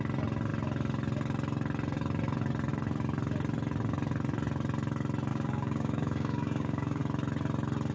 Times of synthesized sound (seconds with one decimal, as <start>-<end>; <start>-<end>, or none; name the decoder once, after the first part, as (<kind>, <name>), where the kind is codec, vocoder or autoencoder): 5.3-7.0 (codec, DAC)